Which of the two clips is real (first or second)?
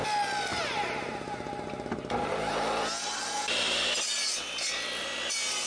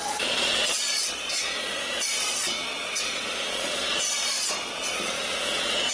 first